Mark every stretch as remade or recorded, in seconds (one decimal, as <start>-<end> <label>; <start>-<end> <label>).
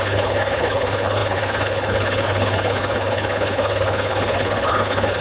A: 0.0-5.2 remade